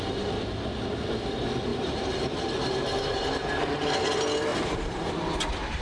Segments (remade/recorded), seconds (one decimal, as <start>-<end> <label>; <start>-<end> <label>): 0.0-1.7 recorded; 1.7-3.9 remade; 3.9-4.5 recorded; 4.5-5.1 remade; 5.1-5.8 recorded